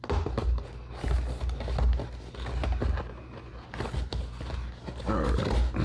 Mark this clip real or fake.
real